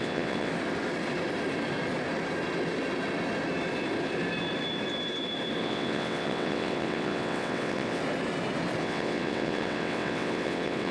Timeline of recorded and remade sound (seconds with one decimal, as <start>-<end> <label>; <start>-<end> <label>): 0.0-0.5 remade; 0.5-5.6 recorded; 5.6-8.0 remade; 8.0-8.8 recorded; 8.8-10.9 remade